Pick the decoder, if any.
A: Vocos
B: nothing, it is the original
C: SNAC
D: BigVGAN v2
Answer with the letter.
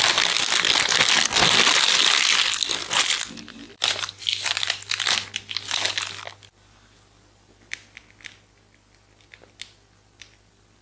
B